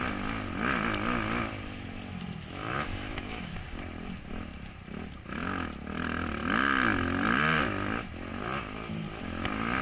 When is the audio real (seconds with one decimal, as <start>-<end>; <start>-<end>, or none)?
0.0-2.6; 3.5-9.8